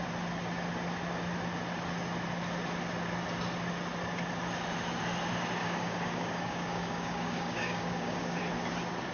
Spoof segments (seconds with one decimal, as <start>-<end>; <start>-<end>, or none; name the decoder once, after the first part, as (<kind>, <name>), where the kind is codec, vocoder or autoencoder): 5.6-8.4 (codec, DAC)